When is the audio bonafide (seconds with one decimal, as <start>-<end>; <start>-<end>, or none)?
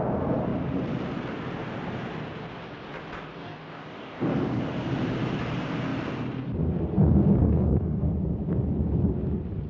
0.0-3.4; 4.6-7.4; 8.1-9.7